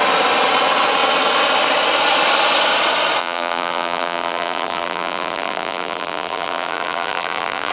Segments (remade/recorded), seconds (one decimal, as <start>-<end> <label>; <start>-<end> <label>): 0.0-3.2 recorded; 3.2-7.7 remade